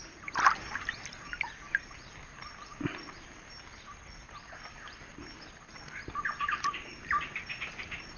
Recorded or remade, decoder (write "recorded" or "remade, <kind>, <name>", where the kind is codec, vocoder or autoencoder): recorded